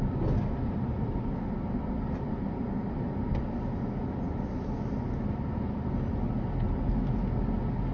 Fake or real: real